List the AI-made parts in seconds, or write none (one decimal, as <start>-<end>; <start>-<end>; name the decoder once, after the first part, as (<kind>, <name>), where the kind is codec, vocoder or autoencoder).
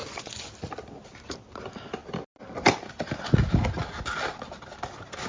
0.0-0.5 (vocoder, Vocos)